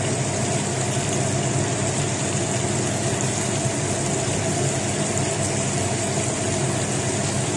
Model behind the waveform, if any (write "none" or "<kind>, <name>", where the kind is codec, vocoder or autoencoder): none